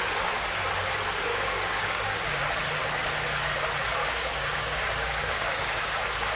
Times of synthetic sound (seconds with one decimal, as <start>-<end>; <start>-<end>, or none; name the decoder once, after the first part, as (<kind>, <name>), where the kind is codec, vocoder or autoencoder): 1.3-2.4 (codec, DAC); 4.0-6.0